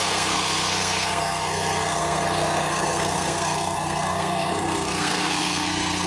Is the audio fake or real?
fake